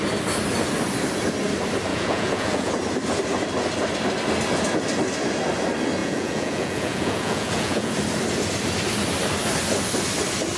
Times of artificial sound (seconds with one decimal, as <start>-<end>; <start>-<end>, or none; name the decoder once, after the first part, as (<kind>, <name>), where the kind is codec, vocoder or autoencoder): 1.9-2.7 (vocoder, Vocos); 6.0-7.9